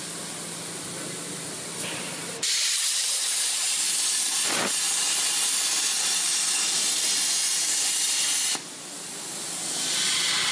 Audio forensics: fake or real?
real